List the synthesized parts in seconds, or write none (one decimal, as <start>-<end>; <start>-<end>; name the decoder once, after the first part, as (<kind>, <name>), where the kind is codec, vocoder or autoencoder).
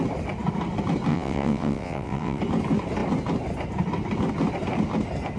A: 1.1-2.4 (vocoder, WaveNeXt)